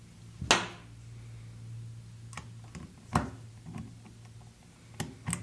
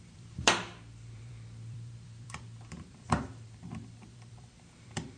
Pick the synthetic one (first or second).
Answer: second